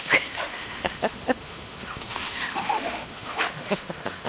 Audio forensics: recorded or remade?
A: remade